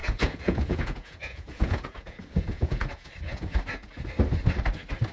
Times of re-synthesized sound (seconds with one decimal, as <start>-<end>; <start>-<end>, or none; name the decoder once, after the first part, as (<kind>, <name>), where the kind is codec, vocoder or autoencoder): 0.0-3.1 (vocoder, Vocos)